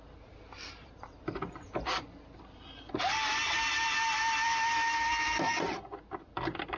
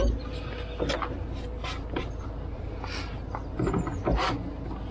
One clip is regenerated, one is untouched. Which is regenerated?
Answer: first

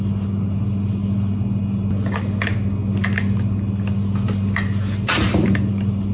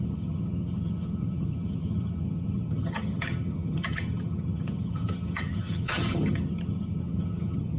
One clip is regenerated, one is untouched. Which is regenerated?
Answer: second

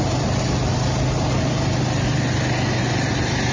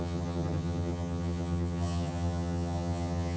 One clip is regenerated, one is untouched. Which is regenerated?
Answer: second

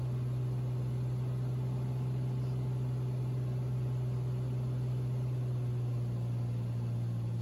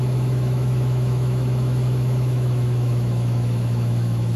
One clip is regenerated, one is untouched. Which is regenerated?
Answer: second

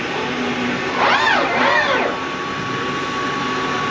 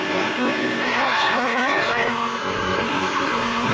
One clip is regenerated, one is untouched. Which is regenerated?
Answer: second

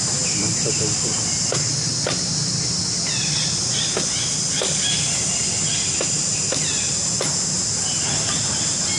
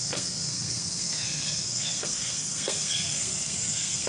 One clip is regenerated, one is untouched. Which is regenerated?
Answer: second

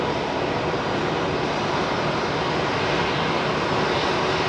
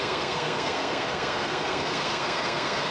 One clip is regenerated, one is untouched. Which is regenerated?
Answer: second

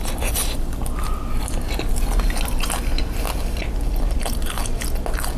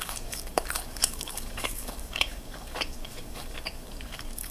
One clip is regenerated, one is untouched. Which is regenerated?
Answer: second